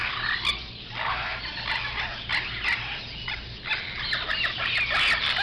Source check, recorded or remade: recorded